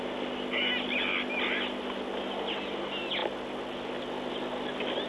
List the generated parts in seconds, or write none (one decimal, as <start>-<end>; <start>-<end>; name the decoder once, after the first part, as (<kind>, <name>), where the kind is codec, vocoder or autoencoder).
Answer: none

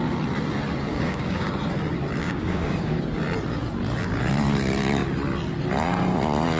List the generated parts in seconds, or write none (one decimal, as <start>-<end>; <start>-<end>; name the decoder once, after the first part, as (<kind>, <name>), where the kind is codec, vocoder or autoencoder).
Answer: 0.9-1.5 (codec, DAC); 2.2-3.0